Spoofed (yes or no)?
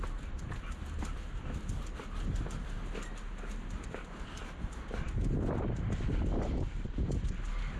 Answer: no